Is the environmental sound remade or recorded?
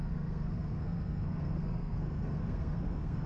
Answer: remade